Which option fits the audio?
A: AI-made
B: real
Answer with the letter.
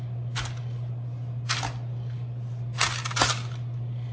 B